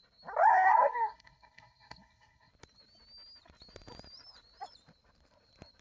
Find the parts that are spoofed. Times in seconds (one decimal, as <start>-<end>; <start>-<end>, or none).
0.5-2.5